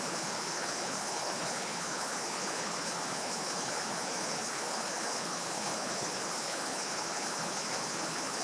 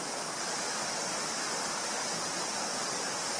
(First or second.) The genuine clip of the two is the second